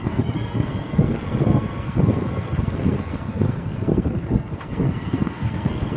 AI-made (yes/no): yes